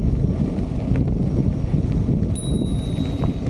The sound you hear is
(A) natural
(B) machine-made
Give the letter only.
A